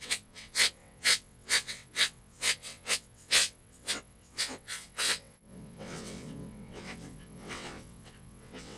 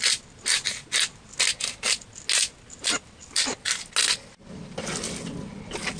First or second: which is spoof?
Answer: first